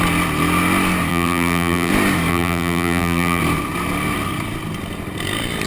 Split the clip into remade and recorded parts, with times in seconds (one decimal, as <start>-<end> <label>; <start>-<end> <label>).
0.0-1.1 recorded; 1.1-1.9 remade; 1.9-2.3 recorded; 2.3-3.4 remade; 3.4-5.7 recorded